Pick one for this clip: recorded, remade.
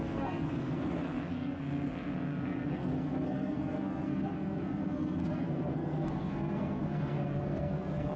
remade